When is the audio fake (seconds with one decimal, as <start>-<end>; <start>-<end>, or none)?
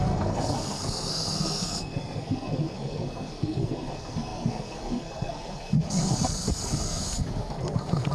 0.0-8.1